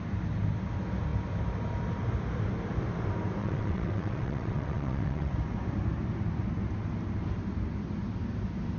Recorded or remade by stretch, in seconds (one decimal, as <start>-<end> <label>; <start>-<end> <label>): 0.0-3.4 recorded; 3.4-5.3 remade; 5.3-8.8 recorded